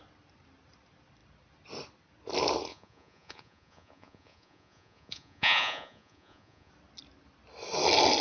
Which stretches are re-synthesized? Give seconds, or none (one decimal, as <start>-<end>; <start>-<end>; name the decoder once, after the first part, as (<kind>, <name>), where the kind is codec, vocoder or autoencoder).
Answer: 2.7-6.7 (vocoder, Vocos)